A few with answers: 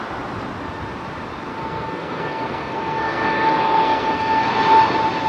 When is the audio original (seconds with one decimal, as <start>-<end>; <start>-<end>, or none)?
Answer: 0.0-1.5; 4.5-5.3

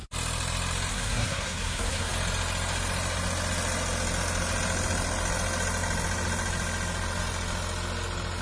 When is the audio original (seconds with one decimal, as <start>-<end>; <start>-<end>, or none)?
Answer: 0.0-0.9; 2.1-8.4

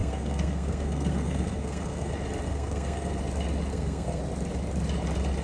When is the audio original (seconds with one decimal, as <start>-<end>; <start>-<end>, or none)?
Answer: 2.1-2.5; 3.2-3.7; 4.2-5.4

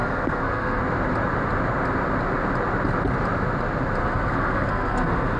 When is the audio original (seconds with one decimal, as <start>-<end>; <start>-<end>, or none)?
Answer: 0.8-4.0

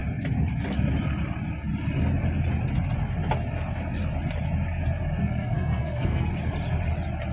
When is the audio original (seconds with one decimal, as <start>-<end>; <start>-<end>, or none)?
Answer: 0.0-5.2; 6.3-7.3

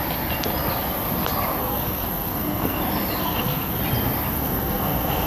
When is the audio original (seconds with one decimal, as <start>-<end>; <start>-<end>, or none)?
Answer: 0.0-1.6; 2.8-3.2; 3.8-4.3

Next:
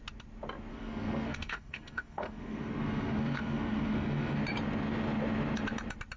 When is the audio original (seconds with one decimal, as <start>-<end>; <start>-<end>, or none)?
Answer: 0.0-0.7; 4.4-6.2